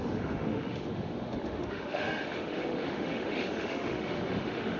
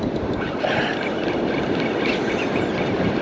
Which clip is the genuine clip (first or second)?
second